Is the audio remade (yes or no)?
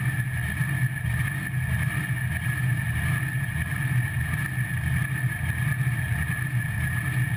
no